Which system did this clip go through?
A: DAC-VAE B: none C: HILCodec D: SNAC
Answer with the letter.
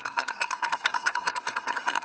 D